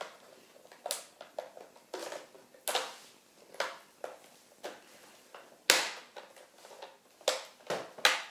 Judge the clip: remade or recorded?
recorded